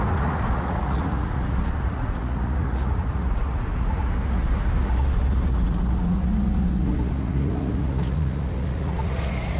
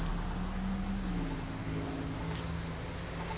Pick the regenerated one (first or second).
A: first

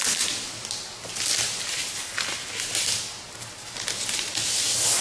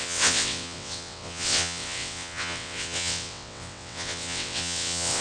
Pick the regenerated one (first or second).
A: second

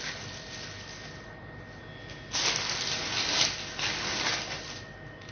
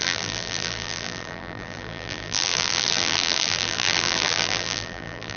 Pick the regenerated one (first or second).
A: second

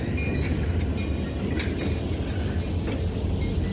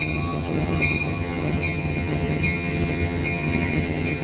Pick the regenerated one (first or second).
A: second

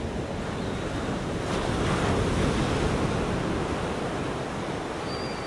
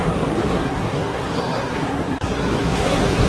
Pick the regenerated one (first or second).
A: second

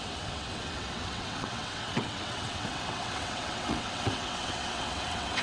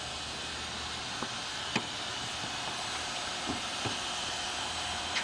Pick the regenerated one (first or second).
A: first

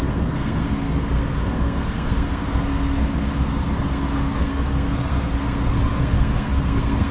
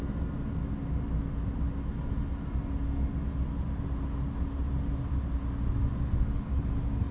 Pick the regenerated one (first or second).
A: first